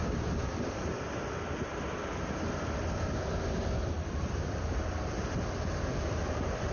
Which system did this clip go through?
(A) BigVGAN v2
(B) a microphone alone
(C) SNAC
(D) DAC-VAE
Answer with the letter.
A